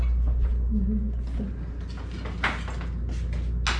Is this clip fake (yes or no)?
no